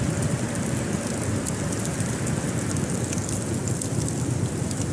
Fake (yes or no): no